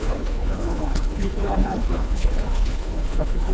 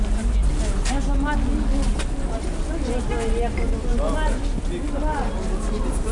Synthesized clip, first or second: first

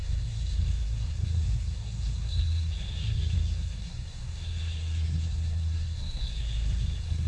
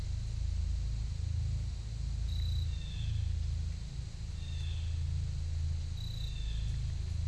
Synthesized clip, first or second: first